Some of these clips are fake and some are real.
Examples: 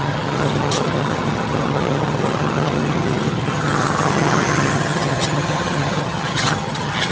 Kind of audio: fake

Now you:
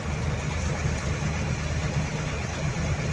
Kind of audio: real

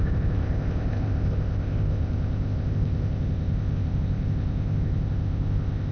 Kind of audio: fake